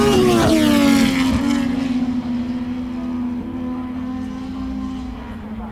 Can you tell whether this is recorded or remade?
recorded